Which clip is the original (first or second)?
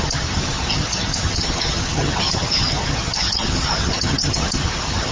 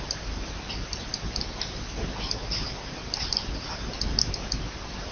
second